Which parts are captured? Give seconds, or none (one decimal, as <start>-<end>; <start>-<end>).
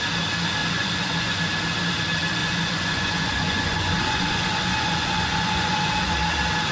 0.0-0.6; 1.4-2.4; 6.1-6.7